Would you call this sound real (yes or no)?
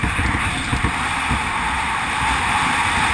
yes